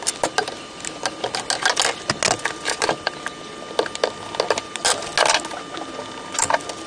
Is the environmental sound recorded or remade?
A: recorded